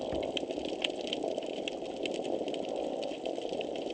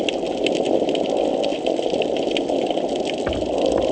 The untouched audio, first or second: second